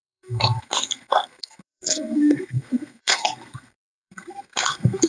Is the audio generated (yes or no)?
yes